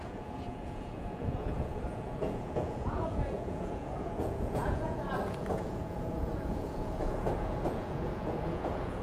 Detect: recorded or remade remade